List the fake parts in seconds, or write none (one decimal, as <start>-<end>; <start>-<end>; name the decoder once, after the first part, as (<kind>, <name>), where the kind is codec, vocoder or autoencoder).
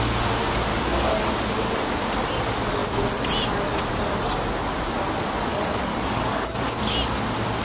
0.7-1.3 (codec, DAC); 5.5-6.8